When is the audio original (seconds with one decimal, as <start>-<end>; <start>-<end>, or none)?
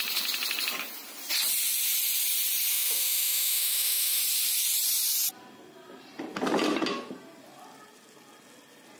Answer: 0.0-2.7; 4.2-9.0